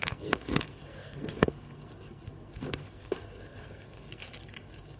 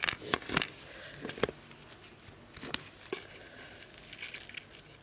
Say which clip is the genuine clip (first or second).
second